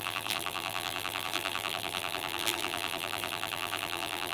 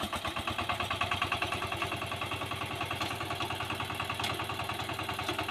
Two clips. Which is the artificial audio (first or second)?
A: first